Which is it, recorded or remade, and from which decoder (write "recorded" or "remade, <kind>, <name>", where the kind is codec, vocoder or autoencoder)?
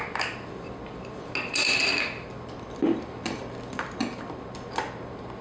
recorded